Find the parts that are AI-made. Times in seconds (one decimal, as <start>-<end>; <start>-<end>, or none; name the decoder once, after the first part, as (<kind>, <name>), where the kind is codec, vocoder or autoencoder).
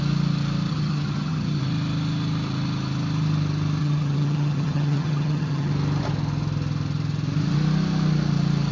0.7-1.6 (vocoder, HiFi-GAN); 3.8-5.7